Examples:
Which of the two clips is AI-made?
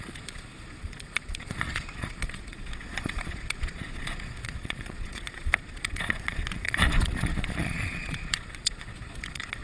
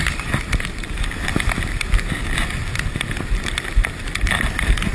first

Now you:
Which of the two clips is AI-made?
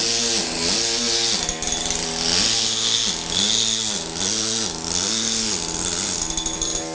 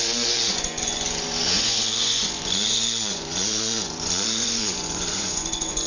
second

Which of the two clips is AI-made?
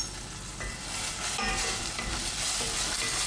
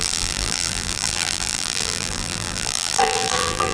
second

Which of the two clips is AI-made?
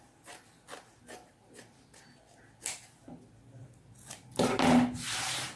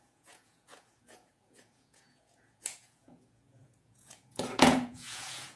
second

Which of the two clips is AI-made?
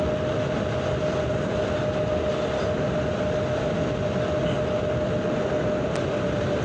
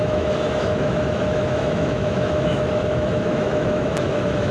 second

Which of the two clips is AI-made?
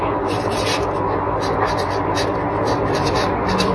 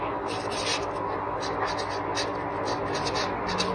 first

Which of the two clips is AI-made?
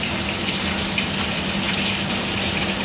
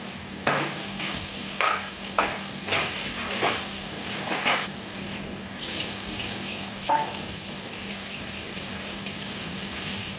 second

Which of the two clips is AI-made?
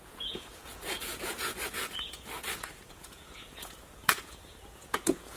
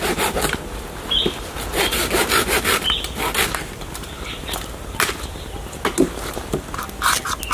first